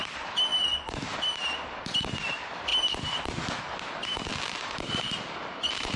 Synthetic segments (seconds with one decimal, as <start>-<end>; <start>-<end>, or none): 0.5-1.4